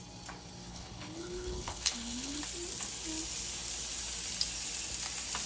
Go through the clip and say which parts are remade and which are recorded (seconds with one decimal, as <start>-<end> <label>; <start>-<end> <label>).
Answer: 0.0-0.7 recorded; 0.7-2.4 remade; 2.4-5.5 recorded